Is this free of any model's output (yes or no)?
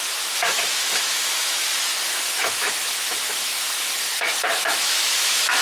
no